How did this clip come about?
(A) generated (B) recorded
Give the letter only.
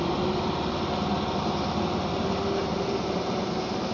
B